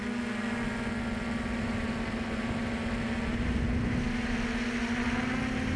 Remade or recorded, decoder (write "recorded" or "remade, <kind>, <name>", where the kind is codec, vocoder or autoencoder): recorded